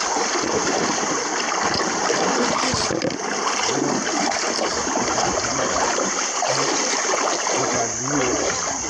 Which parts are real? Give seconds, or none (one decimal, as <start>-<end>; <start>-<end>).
0.0-4.7; 7.4-8.9

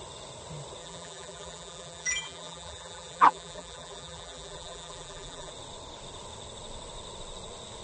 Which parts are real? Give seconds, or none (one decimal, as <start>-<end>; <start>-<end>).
0.0-0.8; 5.5-7.8

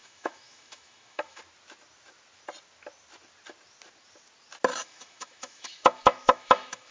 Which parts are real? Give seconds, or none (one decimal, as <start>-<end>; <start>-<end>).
1.4-4.7

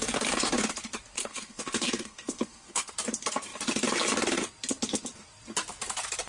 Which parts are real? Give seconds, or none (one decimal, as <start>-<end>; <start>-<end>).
0.0-1.2; 2.9-6.3

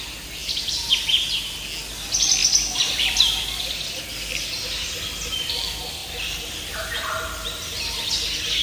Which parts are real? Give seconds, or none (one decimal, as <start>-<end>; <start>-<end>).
0.0-0.4; 1.1-2.4; 3.9-6.0; 6.7-8.6

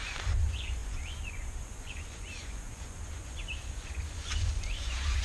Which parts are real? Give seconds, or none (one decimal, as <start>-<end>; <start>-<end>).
none

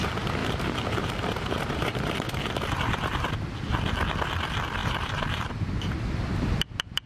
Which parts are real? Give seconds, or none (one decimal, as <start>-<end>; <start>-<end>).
0.0-0.4; 3.3-4.8; 6.1-7.1